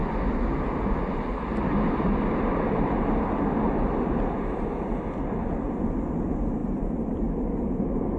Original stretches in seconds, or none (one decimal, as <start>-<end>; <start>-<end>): 0.0-8.2